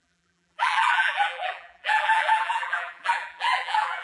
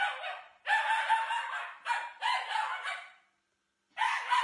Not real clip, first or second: first